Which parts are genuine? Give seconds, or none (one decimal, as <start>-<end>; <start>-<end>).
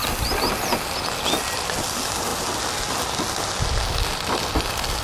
0.0-5.0